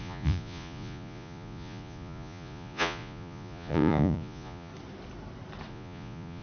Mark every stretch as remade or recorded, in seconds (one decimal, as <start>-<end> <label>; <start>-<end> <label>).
0.0-4.7 remade; 4.7-5.7 recorded; 5.7-6.4 remade